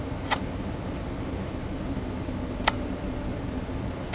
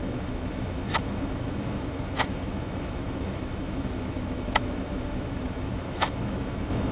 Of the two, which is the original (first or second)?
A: first